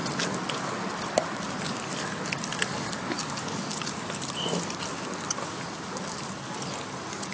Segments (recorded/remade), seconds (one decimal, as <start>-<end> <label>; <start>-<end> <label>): 0.0-7.3 recorded